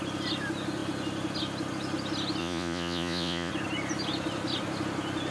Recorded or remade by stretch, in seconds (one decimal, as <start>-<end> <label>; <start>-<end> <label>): 0.0-2.4 recorded; 2.4-3.5 remade; 3.5-5.3 recorded